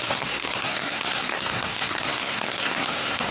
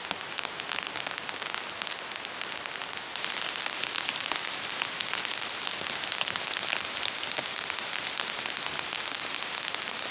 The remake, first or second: first